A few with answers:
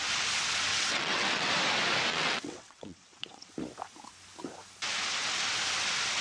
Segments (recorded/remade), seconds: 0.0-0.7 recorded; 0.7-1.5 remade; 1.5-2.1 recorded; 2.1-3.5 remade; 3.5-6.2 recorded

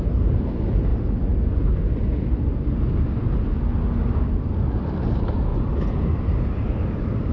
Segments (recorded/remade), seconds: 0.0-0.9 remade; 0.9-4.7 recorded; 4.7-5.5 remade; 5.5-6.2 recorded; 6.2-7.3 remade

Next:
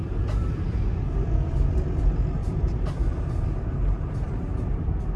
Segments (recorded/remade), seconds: 0.0-1.0 remade; 1.0-2.4 recorded; 2.4-5.2 remade

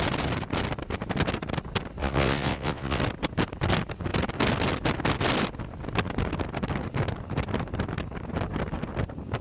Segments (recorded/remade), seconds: 0.0-2.0 recorded; 2.0-3.0 remade; 3.0-9.4 recorded

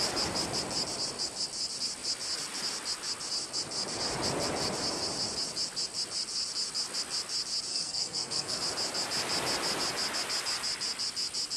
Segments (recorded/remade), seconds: 0.0-7.7 recorded; 7.7-8.6 remade; 8.6-11.6 recorded

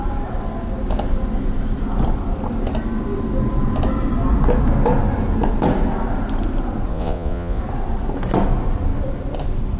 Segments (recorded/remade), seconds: 0.0-6.9 recorded; 6.9-7.6 remade; 7.6-9.8 recorded